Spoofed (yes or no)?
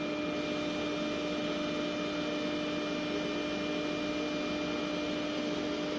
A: no